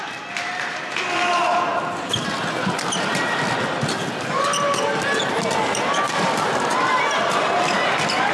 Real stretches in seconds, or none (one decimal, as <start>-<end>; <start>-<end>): 0.0-8.3